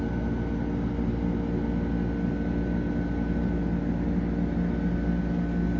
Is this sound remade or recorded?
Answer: recorded